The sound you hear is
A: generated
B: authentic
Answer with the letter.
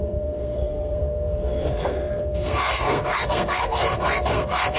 A